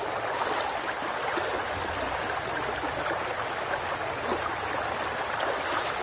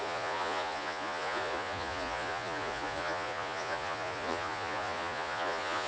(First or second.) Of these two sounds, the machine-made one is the second